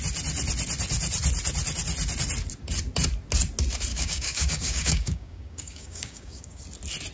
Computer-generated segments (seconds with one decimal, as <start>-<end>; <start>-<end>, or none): 3.9-6.6